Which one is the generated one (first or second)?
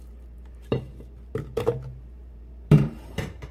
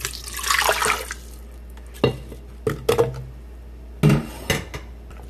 first